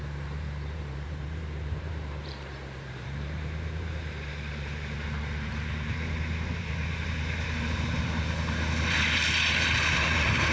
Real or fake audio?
fake